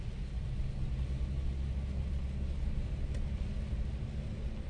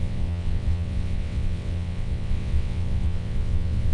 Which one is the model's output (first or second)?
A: second